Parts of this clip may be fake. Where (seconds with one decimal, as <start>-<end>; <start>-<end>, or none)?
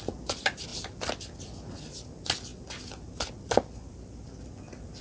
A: none